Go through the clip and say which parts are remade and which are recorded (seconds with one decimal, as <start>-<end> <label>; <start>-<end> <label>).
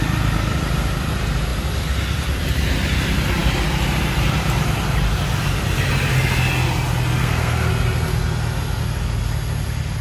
0.0-7.2 recorded; 7.2-7.7 remade; 7.7-10.0 recorded